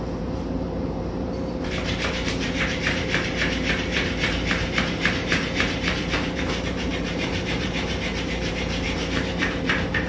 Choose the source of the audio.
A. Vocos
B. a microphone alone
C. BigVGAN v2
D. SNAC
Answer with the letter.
C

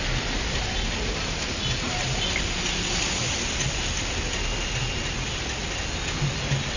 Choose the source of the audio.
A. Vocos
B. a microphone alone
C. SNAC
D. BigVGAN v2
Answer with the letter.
B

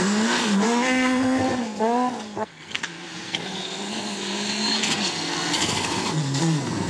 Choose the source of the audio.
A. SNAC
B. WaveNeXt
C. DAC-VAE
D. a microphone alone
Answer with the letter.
A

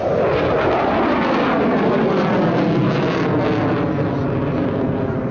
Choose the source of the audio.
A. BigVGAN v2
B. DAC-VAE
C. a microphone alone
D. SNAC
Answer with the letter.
C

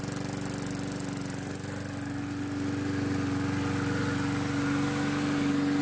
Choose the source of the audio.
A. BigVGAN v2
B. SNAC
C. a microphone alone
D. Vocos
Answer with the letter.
C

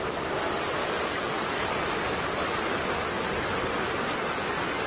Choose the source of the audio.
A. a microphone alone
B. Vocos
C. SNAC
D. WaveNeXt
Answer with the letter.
A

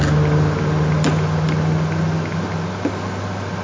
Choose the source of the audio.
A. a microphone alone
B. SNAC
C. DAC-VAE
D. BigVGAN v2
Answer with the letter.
A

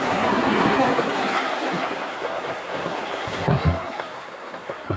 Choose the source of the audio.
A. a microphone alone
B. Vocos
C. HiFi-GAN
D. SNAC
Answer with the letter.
D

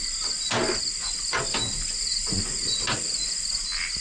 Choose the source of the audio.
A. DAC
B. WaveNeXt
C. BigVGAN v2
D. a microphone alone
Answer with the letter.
D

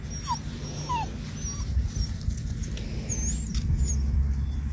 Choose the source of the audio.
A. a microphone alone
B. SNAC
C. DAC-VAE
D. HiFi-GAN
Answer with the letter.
A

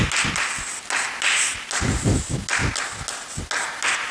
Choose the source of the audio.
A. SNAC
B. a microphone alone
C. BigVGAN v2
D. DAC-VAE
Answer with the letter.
B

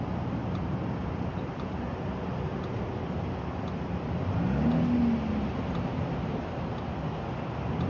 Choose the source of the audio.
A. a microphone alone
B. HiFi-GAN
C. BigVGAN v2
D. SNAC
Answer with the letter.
A